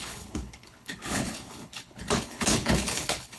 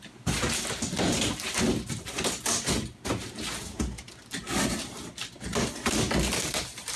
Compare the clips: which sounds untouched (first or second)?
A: second